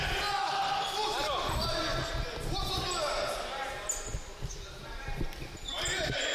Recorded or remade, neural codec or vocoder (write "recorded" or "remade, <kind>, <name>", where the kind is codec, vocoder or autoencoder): recorded